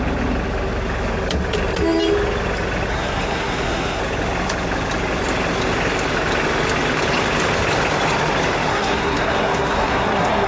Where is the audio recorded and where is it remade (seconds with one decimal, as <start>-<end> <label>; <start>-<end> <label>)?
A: 0.0-2.9 recorded; 2.9-4.0 remade; 4.0-8.7 recorded; 8.7-10.5 remade